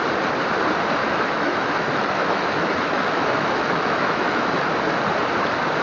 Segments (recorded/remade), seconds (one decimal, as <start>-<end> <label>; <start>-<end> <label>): 0.0-1.0 recorded; 1.0-4.5 remade; 4.5-5.8 recorded